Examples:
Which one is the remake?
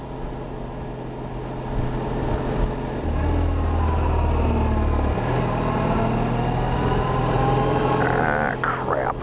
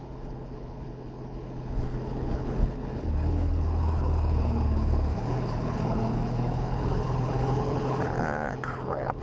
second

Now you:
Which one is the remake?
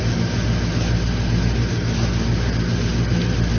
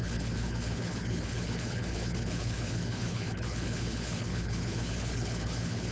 second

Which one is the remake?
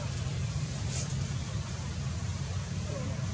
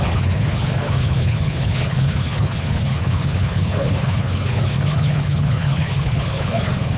second